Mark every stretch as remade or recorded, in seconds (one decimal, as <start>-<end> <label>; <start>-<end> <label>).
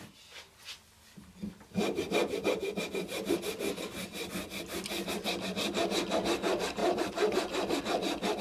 0.0-2.2 recorded; 2.2-2.8 remade; 2.8-6.8 recorded; 6.8-7.8 remade; 7.8-8.4 recorded